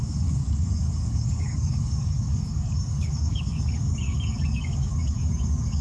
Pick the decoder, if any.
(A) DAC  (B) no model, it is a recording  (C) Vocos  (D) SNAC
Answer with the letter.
A